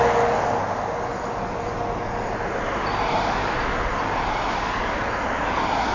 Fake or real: real